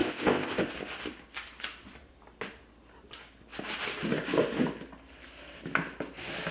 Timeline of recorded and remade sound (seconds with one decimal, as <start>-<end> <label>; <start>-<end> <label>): 0.0-0.7 remade; 0.7-6.5 recorded